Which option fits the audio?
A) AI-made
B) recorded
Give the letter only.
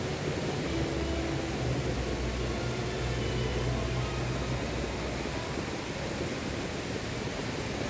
B